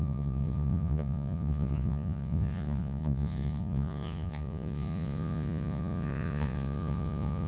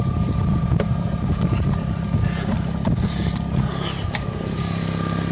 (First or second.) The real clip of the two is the second